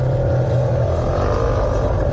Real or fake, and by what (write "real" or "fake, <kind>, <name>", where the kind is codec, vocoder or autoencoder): real